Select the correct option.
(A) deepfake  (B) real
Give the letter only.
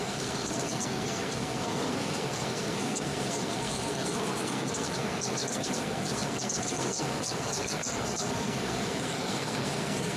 A